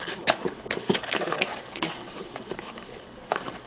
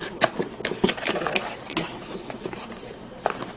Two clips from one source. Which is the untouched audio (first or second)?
second